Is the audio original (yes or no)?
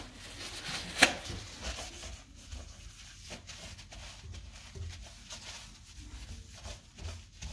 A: yes